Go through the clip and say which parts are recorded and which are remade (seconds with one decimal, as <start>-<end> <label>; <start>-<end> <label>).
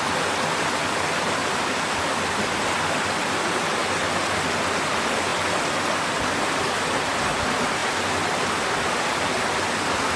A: 0.0-10.2 recorded